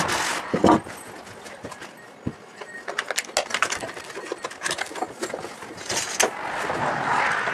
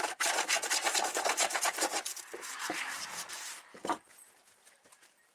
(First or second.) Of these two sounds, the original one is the first